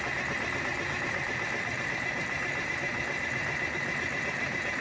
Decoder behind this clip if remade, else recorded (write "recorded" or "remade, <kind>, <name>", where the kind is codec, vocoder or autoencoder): recorded